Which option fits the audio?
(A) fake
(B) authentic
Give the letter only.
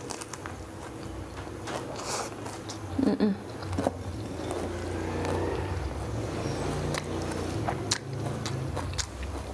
B